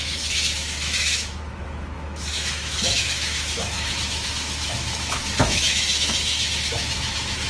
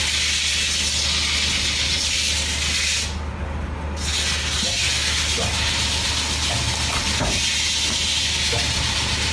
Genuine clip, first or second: second